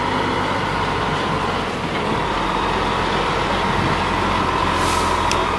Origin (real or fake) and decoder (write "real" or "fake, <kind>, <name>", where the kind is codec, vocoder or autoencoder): real